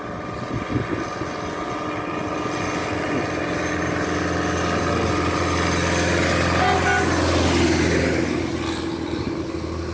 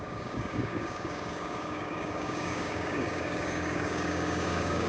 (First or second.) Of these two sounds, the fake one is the second